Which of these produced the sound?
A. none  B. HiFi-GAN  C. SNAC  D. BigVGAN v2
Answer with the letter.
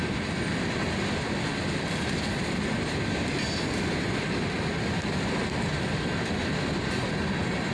A